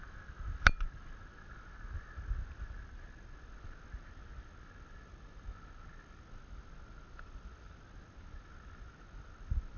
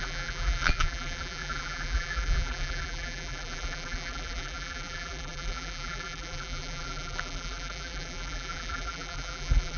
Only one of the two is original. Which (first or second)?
first